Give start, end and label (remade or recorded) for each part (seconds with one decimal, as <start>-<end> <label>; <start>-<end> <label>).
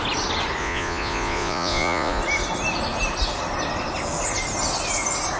0.0-0.6 recorded; 0.6-2.2 remade; 2.2-5.4 recorded